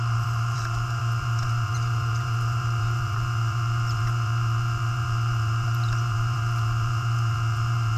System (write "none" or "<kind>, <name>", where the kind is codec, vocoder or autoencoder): vocoder, BigVGAN v2